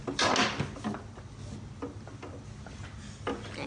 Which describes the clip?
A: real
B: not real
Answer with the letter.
A